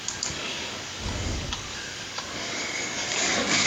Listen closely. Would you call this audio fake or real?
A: fake